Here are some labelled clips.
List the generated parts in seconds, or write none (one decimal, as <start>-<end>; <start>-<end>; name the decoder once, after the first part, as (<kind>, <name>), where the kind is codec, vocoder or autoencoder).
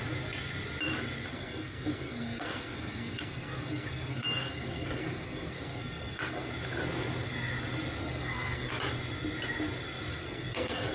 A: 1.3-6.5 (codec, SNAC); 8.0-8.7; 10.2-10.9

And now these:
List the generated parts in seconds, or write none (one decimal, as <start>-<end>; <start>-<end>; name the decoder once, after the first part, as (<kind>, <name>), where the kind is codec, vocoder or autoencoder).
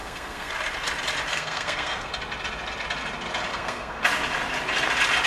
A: 0.0-0.5 (codec, SNAC); 1.3-2.1; 3.5-4.0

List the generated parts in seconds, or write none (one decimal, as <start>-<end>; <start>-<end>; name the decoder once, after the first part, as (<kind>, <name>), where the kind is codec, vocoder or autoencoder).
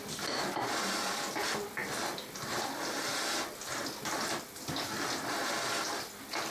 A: none